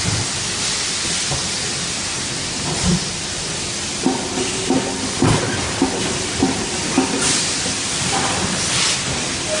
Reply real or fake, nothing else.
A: real